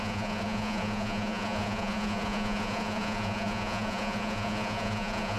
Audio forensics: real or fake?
fake